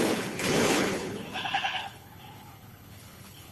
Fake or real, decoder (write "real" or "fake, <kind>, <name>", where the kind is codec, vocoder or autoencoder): fake, codec, HILCodec